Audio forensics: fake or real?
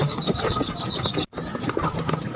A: real